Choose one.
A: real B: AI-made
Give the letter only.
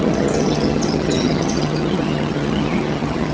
B